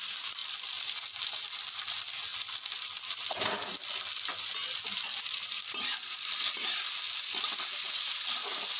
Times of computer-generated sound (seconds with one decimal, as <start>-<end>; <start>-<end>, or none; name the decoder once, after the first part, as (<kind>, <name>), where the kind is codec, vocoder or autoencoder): none